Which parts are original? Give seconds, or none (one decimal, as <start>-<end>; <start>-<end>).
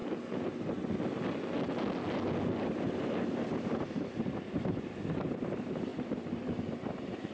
0.0-2.7